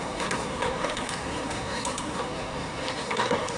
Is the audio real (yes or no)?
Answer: no